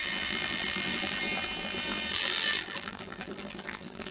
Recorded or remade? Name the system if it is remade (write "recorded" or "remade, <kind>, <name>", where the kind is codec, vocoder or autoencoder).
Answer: remade, vocoder, BigVGAN v2